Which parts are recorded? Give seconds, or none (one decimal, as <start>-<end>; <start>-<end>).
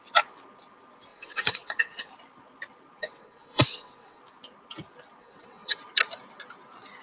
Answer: 0.0-1.1; 2.1-3.0; 4.2-5.2; 5.8-7.0